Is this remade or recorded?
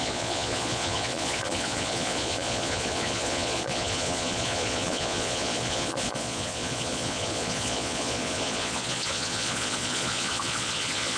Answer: remade